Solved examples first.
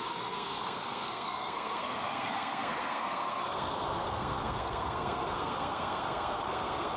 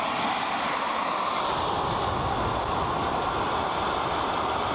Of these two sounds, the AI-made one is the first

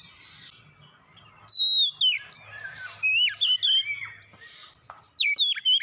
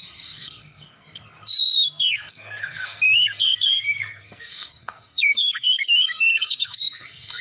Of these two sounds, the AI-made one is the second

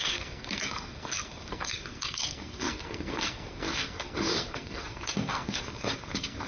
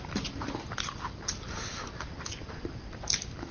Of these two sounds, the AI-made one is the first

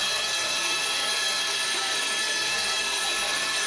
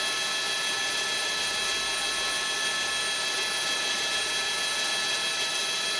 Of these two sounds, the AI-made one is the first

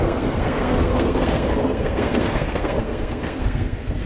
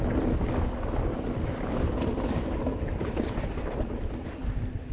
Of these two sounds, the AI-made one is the first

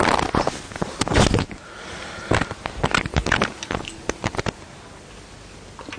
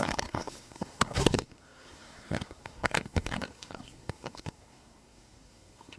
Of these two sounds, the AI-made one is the second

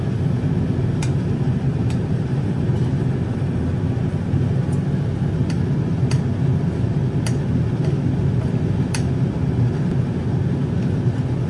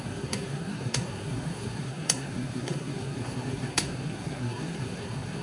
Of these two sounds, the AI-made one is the second